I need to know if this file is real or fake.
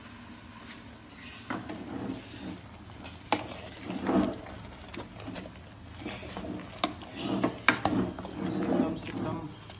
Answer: real